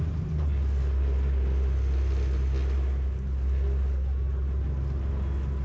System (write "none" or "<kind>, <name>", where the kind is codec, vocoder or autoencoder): none